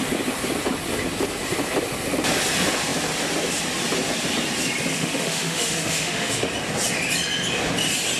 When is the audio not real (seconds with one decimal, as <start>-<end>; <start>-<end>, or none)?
4.9-6.5